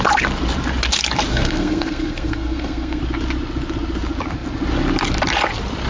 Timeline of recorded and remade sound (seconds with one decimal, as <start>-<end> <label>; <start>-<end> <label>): 0.0-1.3 recorded; 1.3-3.0 remade; 3.0-5.9 recorded